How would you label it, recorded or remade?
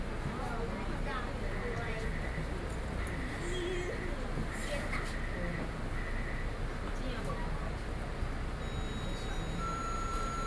recorded